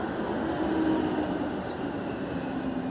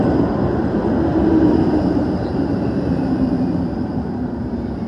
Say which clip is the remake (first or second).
second